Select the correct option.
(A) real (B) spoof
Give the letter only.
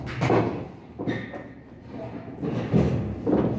A